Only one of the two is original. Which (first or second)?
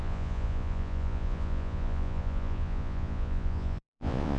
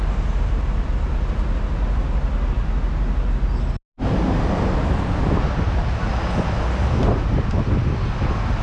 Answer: second